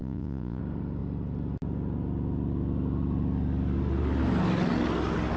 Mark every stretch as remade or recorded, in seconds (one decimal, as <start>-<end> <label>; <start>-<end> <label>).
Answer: 0.0-0.6 remade; 0.6-5.4 recorded